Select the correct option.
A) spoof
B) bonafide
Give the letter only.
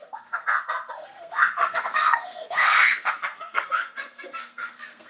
A